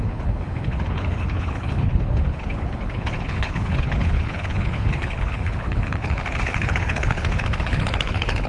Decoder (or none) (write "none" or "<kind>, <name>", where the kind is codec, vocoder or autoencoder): codec, HILCodec